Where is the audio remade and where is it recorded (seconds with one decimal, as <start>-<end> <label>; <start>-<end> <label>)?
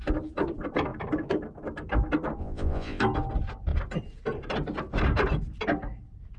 0.0-2.4 recorded; 2.4-3.0 remade; 3.0-6.4 recorded